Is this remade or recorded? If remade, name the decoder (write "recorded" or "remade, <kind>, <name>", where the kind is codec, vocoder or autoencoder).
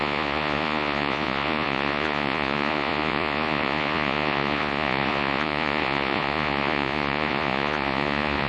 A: remade, vocoder, Vocos